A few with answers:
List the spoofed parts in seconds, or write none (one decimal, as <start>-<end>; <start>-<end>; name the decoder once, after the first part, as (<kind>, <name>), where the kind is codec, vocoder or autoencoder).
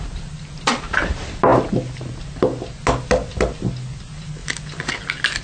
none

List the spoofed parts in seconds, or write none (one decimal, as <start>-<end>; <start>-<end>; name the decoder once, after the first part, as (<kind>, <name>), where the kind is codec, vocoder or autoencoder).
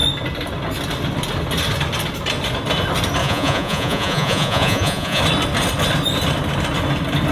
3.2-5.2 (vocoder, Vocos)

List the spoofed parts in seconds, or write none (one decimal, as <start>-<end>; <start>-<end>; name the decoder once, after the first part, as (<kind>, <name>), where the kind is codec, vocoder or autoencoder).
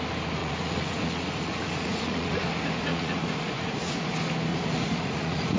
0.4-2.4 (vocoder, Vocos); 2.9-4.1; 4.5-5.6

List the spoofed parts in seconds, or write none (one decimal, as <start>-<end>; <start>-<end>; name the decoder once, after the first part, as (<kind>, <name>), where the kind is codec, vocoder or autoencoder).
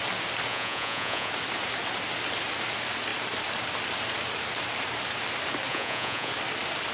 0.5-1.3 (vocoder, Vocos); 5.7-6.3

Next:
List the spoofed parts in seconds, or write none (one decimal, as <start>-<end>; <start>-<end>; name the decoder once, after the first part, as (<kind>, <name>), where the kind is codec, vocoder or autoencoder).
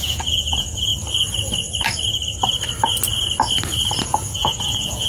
0.0-0.9 (vocoder, Vocos); 4.0-5.1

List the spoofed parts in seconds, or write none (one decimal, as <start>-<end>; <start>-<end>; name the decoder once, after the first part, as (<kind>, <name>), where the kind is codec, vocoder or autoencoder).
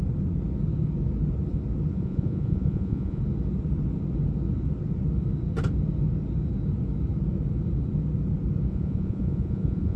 1.9-3.2 (vocoder, Vocos); 8.7-10.0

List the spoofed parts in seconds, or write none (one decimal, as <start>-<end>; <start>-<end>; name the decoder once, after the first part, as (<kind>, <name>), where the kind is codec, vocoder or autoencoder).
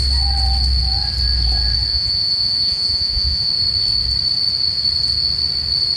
1.9-3.5 (vocoder, Vocos)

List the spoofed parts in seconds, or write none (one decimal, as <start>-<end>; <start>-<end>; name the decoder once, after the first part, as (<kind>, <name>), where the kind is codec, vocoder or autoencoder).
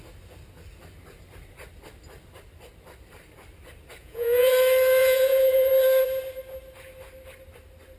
4.0-4.5 (vocoder, Vocos); 5.0-5.7